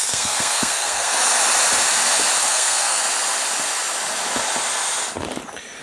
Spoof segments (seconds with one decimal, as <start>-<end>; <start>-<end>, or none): 0.0-1.1; 2.4-3.0

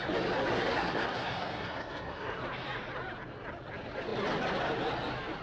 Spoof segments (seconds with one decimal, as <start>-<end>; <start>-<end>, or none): 0.5-2.4